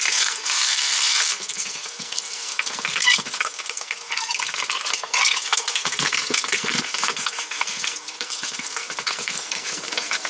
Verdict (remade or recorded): remade